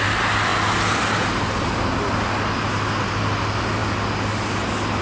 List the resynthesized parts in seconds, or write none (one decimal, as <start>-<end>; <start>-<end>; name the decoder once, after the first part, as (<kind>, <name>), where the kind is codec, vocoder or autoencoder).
none